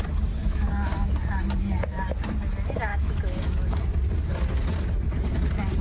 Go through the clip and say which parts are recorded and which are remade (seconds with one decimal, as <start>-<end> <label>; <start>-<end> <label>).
0.0-0.4 recorded; 0.4-1.1 remade; 1.1-2.9 recorded; 2.9-3.8 remade; 3.8-5.8 recorded